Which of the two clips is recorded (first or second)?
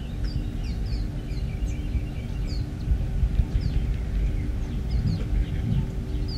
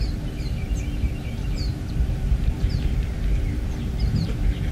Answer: first